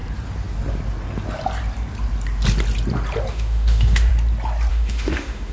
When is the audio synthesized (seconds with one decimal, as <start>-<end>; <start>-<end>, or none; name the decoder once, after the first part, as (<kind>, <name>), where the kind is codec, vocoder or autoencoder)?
3.3-4.1 (autoencoder, DAC-VAE); 4.7-5.5